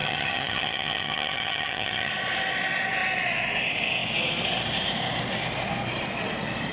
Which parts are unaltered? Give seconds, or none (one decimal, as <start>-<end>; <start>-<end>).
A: 2.1-6.7